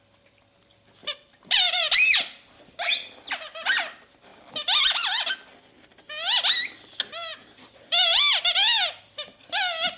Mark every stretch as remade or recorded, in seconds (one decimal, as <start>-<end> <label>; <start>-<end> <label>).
0.0-1.0 recorded; 1.0-1.8 remade; 1.8-7.4 recorded; 7.4-8.2 remade; 8.2-10.0 recorded